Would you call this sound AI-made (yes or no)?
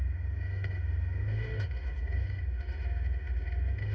yes